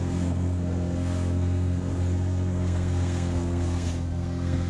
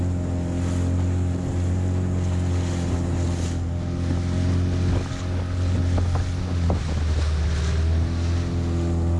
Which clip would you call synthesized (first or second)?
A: first